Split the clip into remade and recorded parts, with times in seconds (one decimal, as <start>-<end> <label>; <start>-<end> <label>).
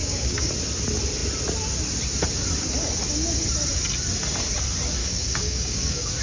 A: 0.0-0.5 remade; 0.5-5.0 recorded; 5.0-6.2 remade